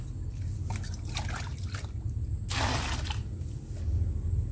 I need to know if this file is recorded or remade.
recorded